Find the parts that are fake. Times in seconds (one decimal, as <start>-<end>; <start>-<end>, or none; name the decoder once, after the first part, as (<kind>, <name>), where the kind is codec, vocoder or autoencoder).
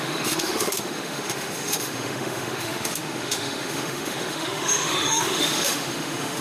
0.0-6.4 (autoencoder, DAC-VAE)